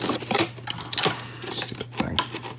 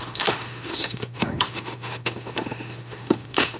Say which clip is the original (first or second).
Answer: first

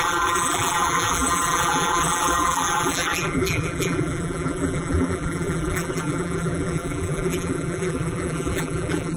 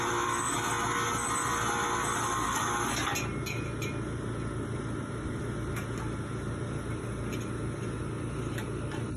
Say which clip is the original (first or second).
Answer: second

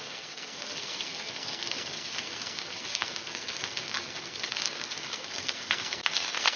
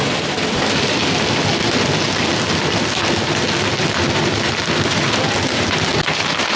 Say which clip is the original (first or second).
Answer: second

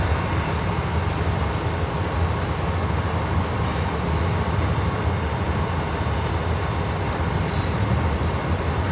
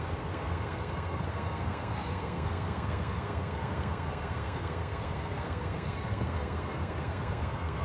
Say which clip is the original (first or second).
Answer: first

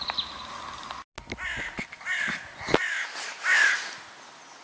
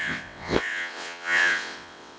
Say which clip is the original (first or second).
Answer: first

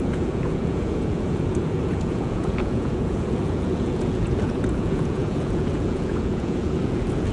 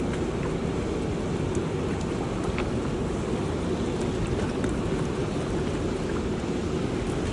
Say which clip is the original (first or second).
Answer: second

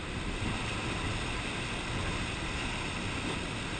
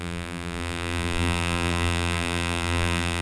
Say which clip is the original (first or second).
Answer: first